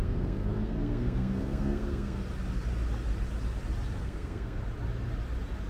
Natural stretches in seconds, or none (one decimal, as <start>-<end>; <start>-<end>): 2.2-4.0; 4.6-5.7

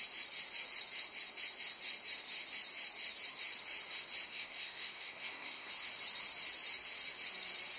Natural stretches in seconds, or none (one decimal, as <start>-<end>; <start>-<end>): 0.0-4.3; 5.7-7.8

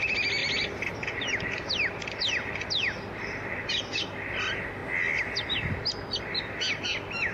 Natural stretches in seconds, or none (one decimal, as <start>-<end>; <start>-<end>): 0.0-7.3

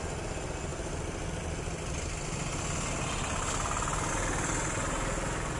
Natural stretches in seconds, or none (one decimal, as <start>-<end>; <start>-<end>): 0.0-5.6

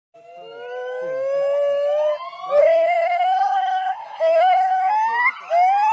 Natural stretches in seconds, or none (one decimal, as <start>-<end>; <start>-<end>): 0.0-2.6; 4.9-5.9

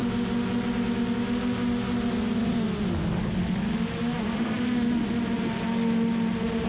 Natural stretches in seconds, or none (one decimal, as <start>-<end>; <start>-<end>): 0.0-6.7

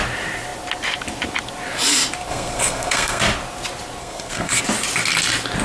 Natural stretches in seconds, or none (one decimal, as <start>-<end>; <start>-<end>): 0.0-2.3; 3.2-4.0; 4.6-5.6